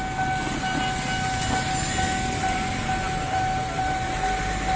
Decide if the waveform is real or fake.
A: real